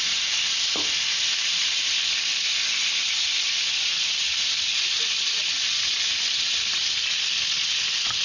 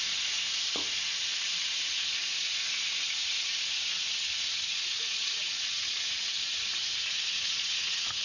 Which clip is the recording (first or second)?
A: first